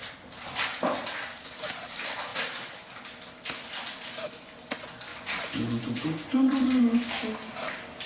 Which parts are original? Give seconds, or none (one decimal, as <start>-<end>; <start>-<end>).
0.0-5.1; 6.8-8.1